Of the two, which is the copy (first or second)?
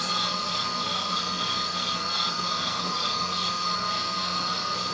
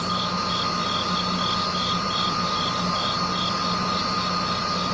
first